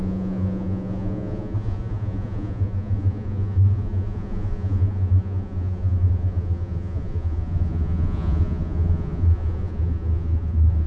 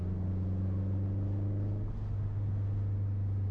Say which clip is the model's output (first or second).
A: first